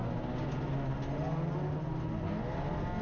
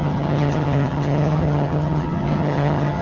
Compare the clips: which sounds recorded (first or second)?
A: first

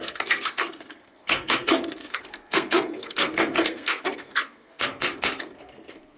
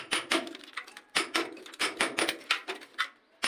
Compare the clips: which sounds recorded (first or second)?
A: second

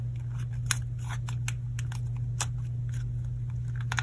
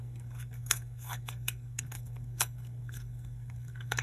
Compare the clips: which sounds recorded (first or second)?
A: first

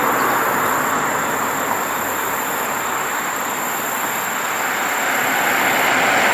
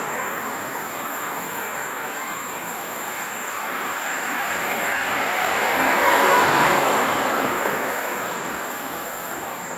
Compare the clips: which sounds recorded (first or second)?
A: first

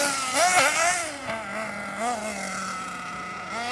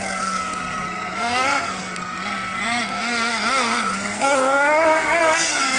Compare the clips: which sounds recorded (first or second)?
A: first